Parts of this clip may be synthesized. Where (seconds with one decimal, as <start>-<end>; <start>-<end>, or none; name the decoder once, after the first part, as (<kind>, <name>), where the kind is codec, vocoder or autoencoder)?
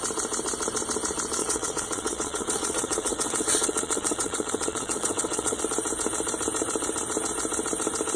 1.4-5.6 (vocoder, WaveNeXt)